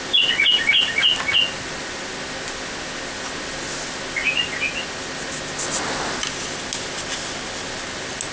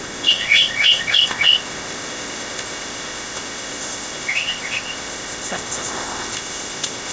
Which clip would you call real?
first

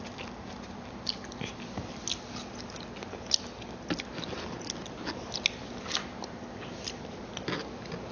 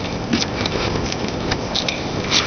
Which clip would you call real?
first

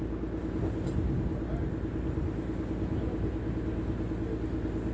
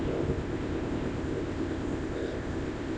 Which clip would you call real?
first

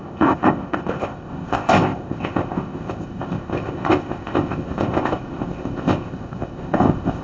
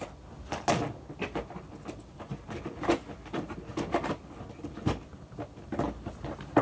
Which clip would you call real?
second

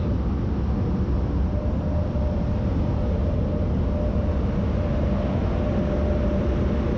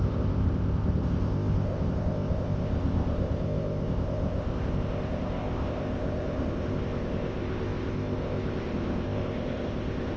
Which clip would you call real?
first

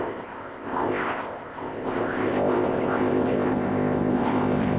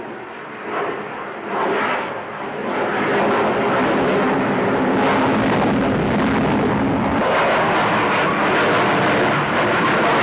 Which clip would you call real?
second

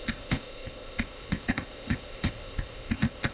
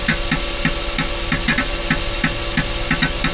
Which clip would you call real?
second